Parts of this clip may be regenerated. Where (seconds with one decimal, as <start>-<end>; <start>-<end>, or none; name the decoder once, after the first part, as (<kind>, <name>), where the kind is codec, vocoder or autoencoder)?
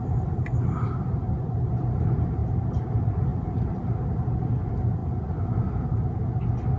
0.0-5.0 (vocoder, BigVGAN v2)